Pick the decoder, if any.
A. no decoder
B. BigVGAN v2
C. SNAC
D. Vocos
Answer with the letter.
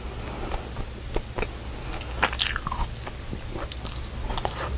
A